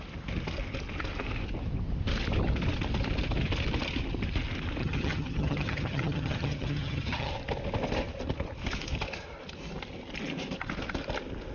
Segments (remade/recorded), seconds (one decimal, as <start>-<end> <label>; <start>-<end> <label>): 0.0-4.8 recorded; 4.8-7.3 remade; 7.3-11.5 recorded